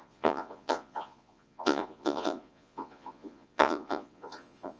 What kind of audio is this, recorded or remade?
remade